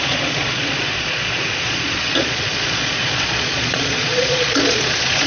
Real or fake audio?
fake